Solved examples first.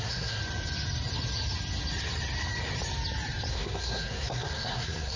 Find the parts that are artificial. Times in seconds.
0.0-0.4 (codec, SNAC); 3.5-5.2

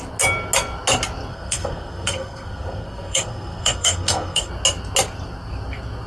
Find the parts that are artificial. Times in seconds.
1.3-4.5 (codec, SNAC)

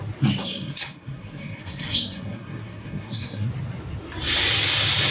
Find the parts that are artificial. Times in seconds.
0.4-3.5 (codec, SNAC)

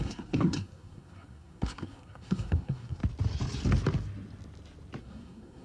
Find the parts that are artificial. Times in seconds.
0.0-3.0 (codec, SNAC); 5.0-5.6

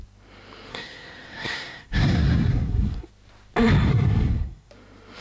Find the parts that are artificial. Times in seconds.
0.7-3.1 (codec, SNAC); 3.9-4.7

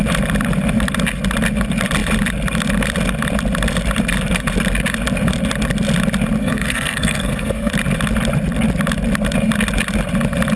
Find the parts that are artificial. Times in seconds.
6.4-7.7 (codec, SNAC)